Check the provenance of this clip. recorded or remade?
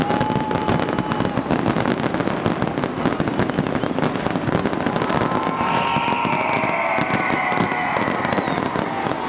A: recorded